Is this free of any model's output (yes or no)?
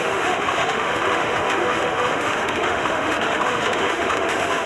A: no